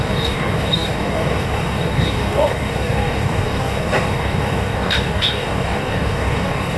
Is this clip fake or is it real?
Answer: fake